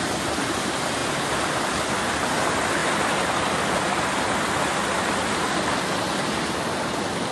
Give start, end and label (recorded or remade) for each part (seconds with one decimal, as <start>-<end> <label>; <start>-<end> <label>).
0.0-7.3 recorded